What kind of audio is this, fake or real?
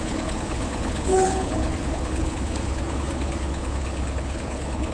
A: fake